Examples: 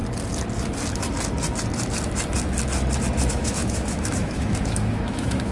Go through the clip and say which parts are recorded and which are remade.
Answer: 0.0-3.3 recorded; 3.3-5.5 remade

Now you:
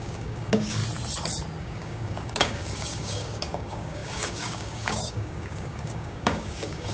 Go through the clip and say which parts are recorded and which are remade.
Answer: 0.0-0.8 remade; 0.8-1.6 recorded; 1.6-6.9 remade

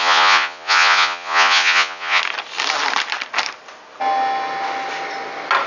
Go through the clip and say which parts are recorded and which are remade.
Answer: 0.0-2.2 remade; 2.2-5.7 recorded